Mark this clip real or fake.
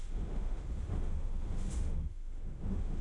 fake